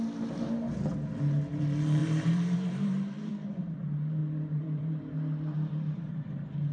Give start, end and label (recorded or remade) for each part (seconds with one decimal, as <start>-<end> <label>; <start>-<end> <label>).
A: 0.0-2.0 recorded; 2.0-3.3 remade; 3.3-4.2 recorded; 4.2-6.1 remade; 6.1-6.7 recorded